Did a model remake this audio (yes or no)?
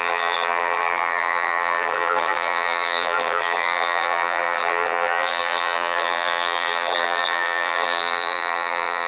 yes